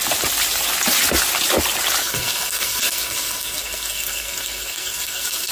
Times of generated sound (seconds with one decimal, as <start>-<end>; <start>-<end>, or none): 2.0-5.5